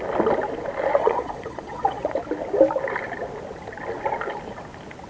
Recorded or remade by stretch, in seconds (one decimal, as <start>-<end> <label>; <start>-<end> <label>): 0.0-1.0 recorded; 1.0-2.1 remade; 2.1-5.1 recorded